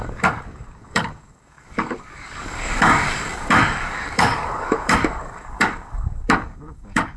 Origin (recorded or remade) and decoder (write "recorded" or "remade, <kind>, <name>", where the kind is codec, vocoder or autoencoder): remade, codec, DAC